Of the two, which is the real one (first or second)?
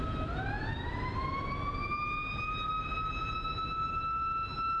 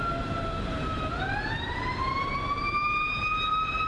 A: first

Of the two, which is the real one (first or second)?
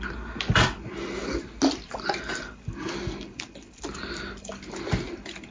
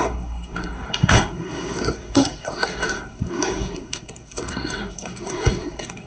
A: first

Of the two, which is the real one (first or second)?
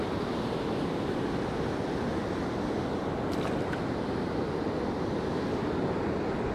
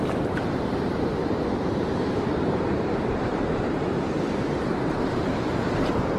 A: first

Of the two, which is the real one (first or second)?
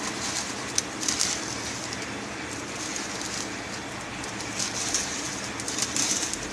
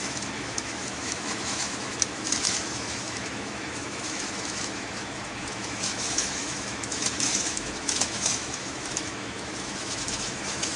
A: first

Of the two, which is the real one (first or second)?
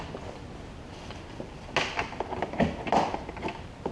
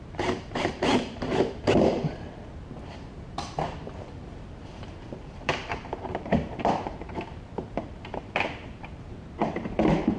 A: first